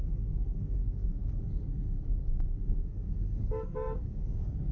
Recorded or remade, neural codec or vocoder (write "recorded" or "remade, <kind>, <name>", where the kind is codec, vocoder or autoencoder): remade, codec, SNAC